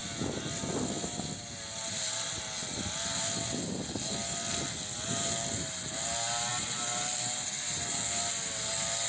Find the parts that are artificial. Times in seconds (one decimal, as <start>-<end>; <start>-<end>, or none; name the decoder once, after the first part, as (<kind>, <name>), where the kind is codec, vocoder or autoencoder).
none